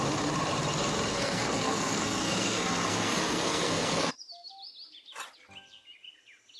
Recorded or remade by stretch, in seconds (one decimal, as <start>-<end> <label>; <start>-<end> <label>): 0.0-1.1 recorded; 1.1-4.1 remade; 4.1-6.6 recorded